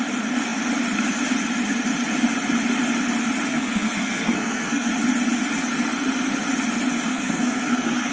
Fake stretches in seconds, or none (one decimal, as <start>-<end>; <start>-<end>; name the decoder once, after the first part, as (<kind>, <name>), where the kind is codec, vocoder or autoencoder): 3.5-4.9 (codec, SNAC); 7.1-8.1